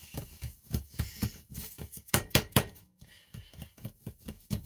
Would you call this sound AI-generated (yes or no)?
yes